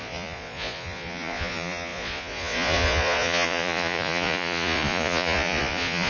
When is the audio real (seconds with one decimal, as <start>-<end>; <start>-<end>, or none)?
none